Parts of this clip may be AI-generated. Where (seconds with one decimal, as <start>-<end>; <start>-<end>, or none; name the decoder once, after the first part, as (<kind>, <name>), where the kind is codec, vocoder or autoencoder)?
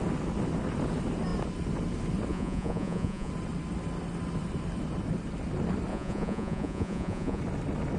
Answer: 2.3-3.3 (vocoder, Vocos); 5.9-7.4